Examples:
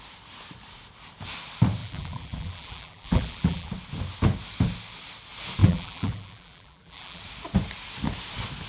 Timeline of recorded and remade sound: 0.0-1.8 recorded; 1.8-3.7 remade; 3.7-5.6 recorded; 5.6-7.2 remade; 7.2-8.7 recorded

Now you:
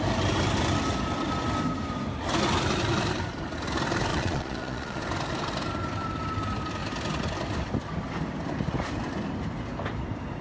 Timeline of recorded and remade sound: 0.0-4.1 recorded; 4.1-5.0 remade; 5.0-10.4 recorded